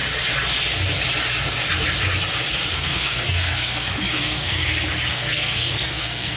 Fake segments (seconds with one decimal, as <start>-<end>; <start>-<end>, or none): 2.7-4.6; 5.1-6.4